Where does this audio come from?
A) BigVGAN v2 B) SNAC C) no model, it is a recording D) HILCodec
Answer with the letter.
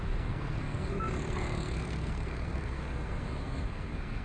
B